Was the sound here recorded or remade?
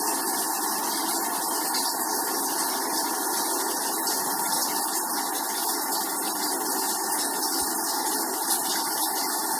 recorded